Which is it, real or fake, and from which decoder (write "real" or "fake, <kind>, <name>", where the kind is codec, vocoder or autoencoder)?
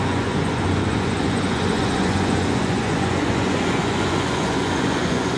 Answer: fake, vocoder, Vocos